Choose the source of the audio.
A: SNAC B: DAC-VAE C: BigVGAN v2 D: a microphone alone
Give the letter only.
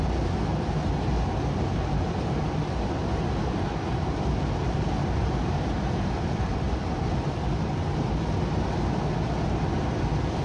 D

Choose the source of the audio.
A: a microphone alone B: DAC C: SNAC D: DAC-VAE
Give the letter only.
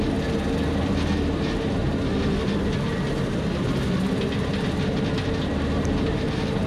A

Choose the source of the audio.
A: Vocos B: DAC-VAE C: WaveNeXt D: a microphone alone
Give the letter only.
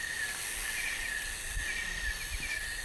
D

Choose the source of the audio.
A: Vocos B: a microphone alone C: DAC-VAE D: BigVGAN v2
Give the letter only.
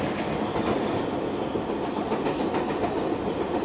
B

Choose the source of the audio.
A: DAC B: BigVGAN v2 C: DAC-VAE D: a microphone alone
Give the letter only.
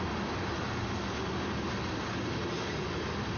D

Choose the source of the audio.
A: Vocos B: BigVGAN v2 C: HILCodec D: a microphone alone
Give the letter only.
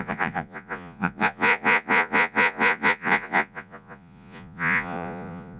A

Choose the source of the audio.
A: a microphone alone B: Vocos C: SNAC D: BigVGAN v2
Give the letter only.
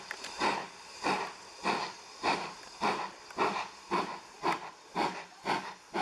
A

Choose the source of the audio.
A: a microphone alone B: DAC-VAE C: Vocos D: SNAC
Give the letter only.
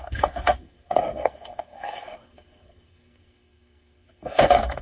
D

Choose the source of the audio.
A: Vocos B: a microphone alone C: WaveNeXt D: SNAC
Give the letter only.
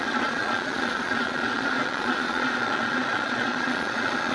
A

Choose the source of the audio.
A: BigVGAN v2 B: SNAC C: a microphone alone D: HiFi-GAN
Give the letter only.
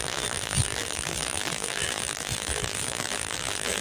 A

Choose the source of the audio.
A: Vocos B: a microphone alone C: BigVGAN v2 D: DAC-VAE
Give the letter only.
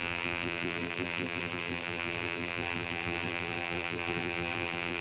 C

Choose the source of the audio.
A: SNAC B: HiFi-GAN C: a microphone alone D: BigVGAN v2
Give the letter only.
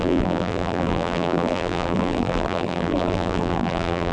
D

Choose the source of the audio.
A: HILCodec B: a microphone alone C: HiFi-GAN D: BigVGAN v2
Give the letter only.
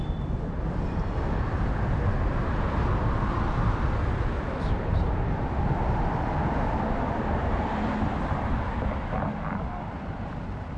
B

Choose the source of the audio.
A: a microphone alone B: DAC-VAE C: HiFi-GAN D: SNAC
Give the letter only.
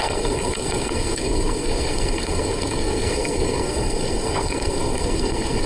D